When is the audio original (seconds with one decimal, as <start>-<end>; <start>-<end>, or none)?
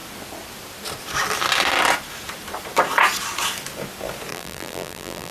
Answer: 0.0-4.3